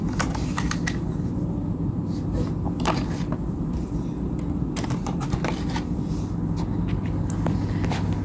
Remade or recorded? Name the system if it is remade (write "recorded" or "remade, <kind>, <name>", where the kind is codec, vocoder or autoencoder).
recorded